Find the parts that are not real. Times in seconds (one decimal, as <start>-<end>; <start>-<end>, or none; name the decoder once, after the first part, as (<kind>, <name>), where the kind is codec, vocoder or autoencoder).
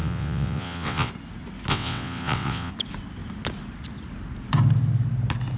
0.0-1.1 (vocoder, WaveNeXt); 1.7-2.7